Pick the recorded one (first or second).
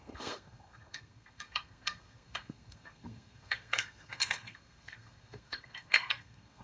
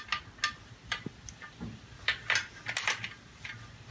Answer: second